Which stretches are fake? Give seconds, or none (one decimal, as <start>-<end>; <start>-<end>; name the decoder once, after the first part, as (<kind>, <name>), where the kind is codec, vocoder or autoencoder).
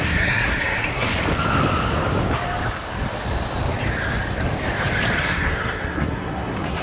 0.0-1.1 (codec, SNAC); 5.2-6.8